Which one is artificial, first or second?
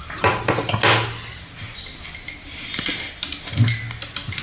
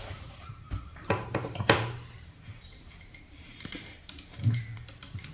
second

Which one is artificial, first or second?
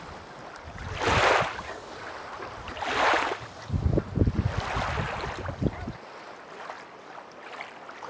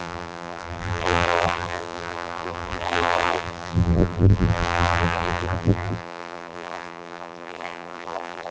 second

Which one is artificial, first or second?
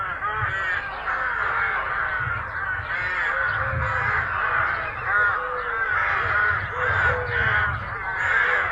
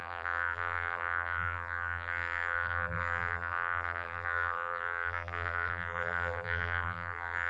second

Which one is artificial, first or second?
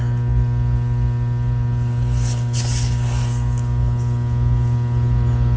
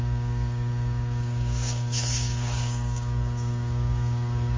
second